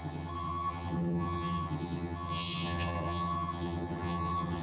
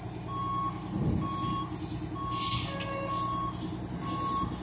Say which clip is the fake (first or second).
first